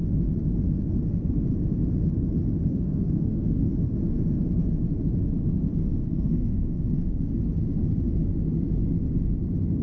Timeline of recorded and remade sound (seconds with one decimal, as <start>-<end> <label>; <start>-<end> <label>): 0.0-2.7 recorded; 2.7-3.7 remade; 3.7-6.1 recorded; 6.1-6.8 remade; 6.8-9.8 recorded